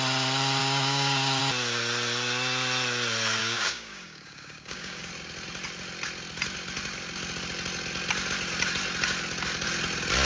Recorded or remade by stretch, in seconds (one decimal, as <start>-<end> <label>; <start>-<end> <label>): 0.0-0.6 recorded; 0.6-1.4 remade; 1.4-3.4 recorded; 3.4-5.1 remade; 5.1-10.2 recorded